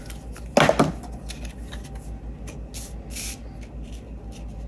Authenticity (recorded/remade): recorded